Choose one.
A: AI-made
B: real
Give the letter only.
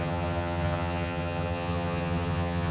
A